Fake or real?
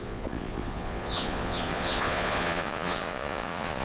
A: fake